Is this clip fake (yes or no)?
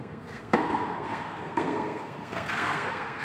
yes